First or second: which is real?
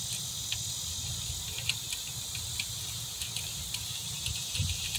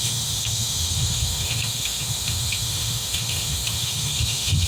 first